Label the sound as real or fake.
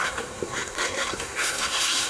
fake